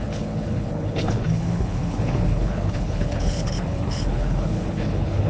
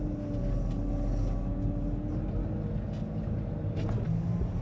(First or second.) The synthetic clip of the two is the first